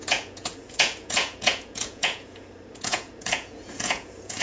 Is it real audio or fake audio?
fake